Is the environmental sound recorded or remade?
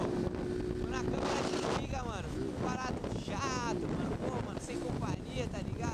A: recorded